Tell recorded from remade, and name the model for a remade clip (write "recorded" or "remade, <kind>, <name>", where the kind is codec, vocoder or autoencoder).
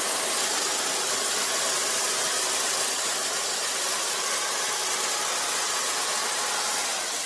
recorded